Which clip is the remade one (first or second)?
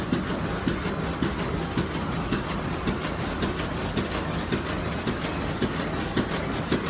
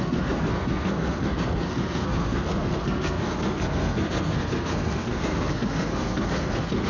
second